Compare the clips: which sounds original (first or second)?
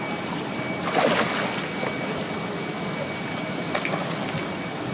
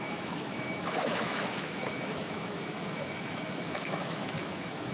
first